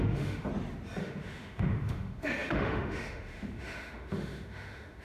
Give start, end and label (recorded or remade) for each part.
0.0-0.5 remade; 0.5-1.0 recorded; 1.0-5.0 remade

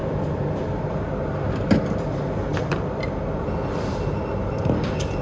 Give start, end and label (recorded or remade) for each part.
0.0-2.5 recorded; 2.5-3.2 remade; 3.2-5.2 recorded

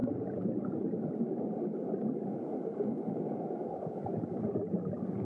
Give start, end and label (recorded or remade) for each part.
0.0-5.2 recorded

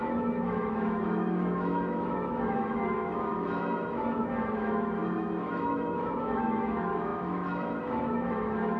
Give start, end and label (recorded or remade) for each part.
0.0-8.8 remade

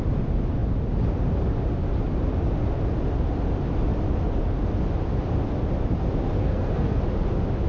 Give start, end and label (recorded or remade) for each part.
0.0-6.4 recorded; 6.4-7.0 remade; 7.0-7.7 recorded

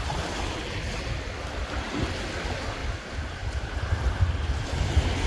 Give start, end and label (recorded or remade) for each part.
0.0-5.3 recorded